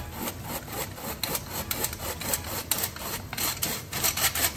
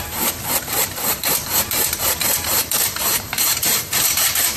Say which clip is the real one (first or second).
first